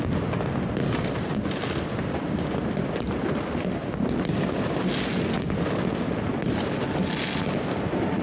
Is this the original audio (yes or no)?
yes